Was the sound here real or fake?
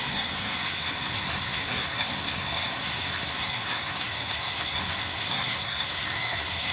fake